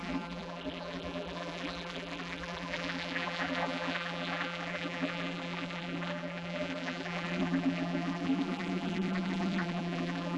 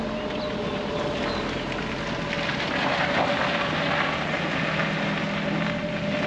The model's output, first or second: first